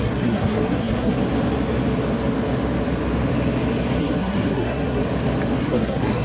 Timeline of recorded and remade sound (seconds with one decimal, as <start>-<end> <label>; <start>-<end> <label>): 0.0-1.2 remade; 1.2-4.0 recorded; 4.0-5.0 remade; 5.0-5.6 recorded; 5.6-6.2 remade